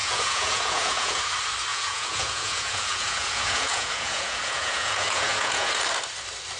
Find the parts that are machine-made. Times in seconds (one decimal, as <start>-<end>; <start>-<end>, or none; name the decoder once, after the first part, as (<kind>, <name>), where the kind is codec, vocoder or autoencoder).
0.0-1.2 (vocoder, Vocos); 1.7-5.7